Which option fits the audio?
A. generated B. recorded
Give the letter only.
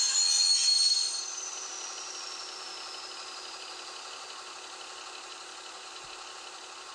B